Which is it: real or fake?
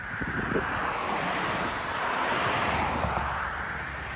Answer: fake